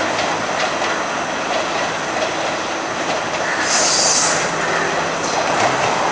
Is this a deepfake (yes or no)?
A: no